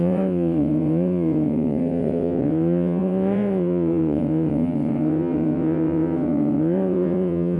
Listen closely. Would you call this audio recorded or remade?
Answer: remade